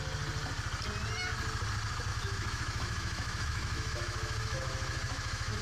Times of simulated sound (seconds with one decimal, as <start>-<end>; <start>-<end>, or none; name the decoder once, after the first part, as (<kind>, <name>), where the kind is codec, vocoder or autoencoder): 2.1-5.6 (autoencoder, DAC-VAE)